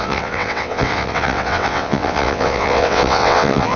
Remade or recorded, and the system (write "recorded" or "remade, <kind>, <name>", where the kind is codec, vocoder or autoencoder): remade, vocoder, WaveNeXt